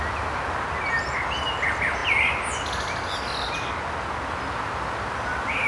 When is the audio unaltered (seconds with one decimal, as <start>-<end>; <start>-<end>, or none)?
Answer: 0.0-5.7